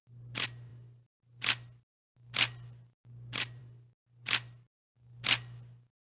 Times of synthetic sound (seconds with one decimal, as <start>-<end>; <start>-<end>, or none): none